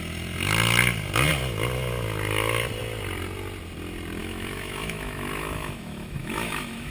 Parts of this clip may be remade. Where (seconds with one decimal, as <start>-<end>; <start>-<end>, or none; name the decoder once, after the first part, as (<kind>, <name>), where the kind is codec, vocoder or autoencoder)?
4.2-6.9 (autoencoder, DAC-VAE)